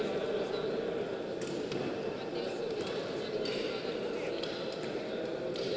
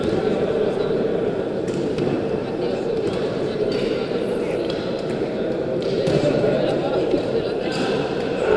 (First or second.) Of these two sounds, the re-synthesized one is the second